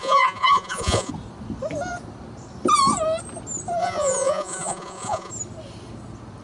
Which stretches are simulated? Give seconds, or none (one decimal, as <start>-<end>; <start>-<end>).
0.0-1.1; 3.8-5.3